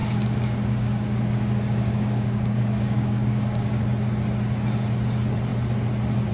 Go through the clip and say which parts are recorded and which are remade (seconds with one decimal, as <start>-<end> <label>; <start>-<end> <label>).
0.0-3.8 remade; 3.8-6.3 recorded